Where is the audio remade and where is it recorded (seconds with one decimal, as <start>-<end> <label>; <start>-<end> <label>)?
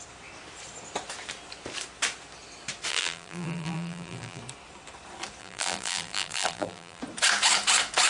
0.0-2.9 recorded; 2.9-4.4 remade; 4.4-5.4 recorded; 5.4-7.0 remade; 7.0-8.1 recorded